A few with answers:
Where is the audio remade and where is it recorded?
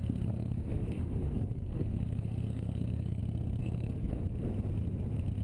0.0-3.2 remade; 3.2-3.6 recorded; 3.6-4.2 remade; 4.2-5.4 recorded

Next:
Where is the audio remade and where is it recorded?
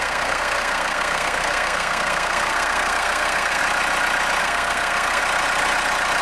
0.0-3.6 remade; 3.6-4.4 recorded; 4.4-5.2 remade; 5.2-6.2 recorded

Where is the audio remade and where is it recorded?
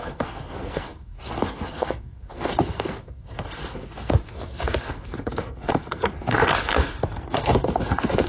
0.0-8.3 remade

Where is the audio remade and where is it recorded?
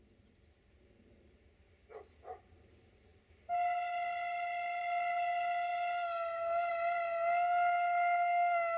0.0-8.8 recorded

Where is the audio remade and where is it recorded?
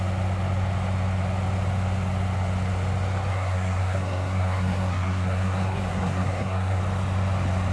0.0-3.3 recorded; 3.3-6.8 remade; 6.8-7.7 recorded